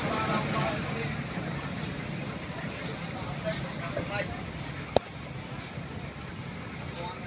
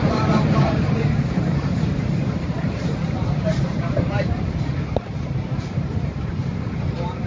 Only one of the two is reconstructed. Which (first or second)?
second